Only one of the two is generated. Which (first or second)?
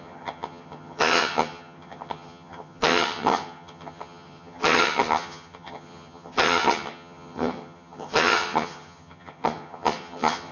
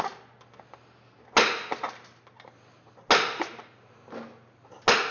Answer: first